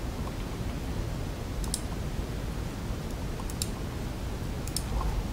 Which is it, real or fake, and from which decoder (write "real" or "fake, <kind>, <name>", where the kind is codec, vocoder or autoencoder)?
real